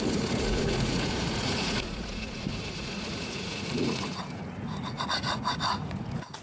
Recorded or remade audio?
remade